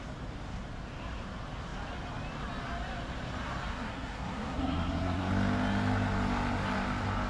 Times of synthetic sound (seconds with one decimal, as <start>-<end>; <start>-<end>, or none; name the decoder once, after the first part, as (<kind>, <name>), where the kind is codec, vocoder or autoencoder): 3.7-5.3 (codec, SNAC)